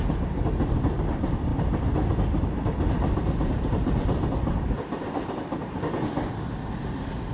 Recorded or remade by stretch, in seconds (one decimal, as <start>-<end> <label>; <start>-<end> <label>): 0.0-7.3 recorded